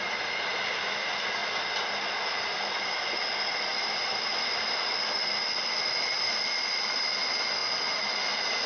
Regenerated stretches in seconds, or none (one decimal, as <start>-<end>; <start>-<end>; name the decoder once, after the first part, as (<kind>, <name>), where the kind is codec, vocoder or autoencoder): 3.7-7.1 (vocoder, BigVGAN v2)